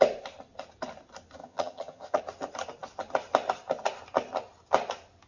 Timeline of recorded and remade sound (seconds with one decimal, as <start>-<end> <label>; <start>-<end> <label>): 0.0-1.4 recorded; 1.4-2.2 remade; 2.2-5.3 recorded